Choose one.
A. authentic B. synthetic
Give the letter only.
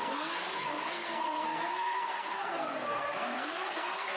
B